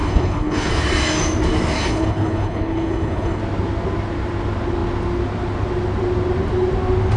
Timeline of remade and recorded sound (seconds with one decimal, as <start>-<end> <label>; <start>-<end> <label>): 0.0-0.7 remade; 0.7-1.8 recorded; 1.8-3.4 remade; 3.4-7.2 recorded